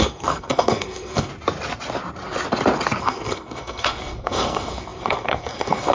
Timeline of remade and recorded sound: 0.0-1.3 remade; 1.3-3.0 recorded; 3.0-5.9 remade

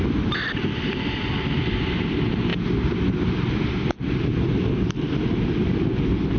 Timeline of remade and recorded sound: 0.0-6.4 recorded

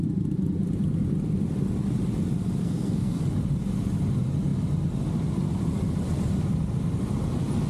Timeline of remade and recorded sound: 0.0-2.6 recorded; 2.6-3.2 remade; 3.2-7.7 recorded

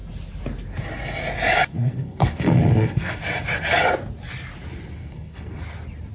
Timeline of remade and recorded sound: 0.0-1.7 recorded; 1.7-3.2 remade; 3.2-5.0 recorded; 5.0-5.6 remade; 5.6-6.1 recorded

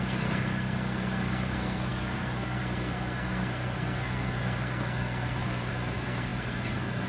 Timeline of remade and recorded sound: 0.0-7.1 remade

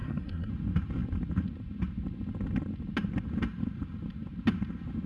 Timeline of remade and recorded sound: 0.0-0.5 remade; 0.5-5.1 recorded

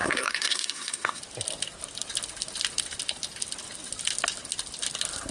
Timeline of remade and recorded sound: 0.0-1.2 remade; 1.2-5.3 recorded